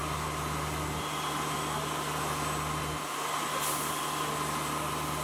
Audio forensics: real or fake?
real